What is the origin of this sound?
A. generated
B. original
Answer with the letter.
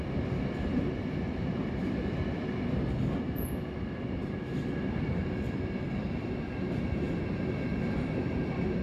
B